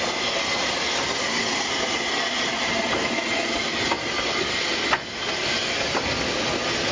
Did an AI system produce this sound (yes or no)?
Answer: no